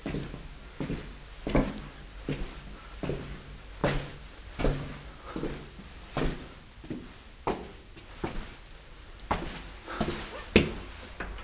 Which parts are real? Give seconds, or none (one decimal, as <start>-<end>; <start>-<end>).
0.0-11.4